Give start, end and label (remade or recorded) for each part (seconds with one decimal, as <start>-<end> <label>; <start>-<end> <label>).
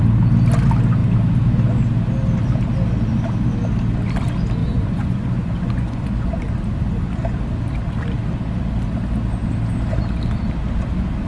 0.0-4.6 recorded; 4.6-6.0 remade; 6.0-11.3 recorded